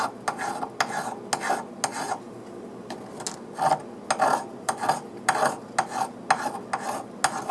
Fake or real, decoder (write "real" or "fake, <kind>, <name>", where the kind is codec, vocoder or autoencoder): real